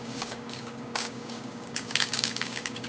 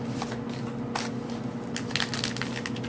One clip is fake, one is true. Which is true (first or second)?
second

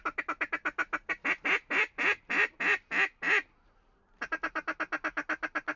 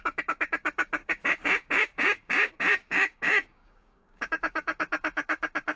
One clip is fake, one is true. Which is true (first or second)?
first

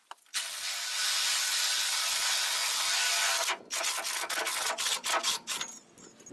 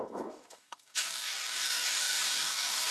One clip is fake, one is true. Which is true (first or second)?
first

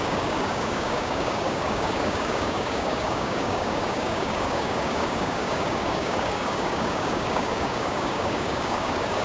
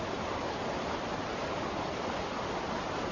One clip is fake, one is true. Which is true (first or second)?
second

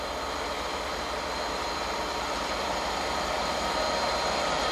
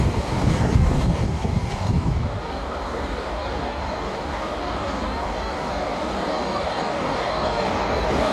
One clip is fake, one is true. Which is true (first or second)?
first